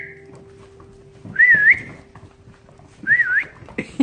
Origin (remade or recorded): recorded